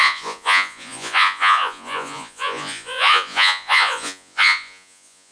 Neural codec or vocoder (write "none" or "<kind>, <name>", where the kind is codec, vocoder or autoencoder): vocoder, Vocos